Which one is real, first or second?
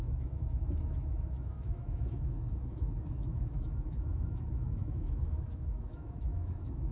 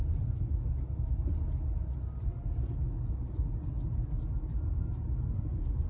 second